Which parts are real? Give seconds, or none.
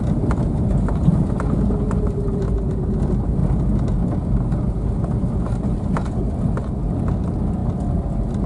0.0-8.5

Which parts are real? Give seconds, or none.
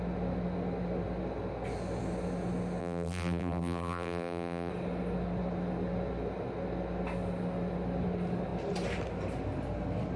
0.0-2.8; 4.7-10.2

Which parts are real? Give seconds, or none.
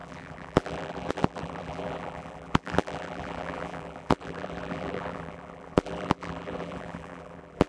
none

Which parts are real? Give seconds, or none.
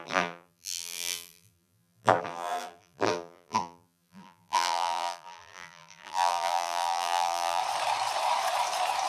7.6-9.1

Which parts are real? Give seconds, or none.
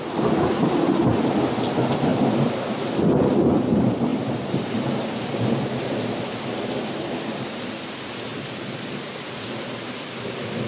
0.0-2.1; 2.8-4.1; 5.3-8.3; 9.8-10.7